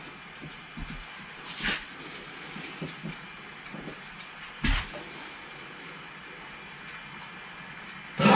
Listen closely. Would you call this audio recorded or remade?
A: recorded